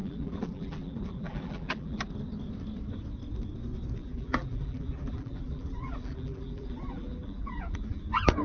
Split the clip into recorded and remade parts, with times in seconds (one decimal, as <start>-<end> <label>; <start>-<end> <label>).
0.0-2.0 remade; 2.0-4.0 recorded; 4.0-8.0 remade; 8.0-8.4 recorded